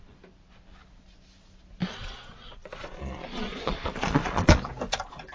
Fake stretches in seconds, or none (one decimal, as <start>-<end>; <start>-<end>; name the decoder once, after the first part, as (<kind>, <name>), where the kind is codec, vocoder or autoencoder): 1.8-4.7 (vocoder, Vocos)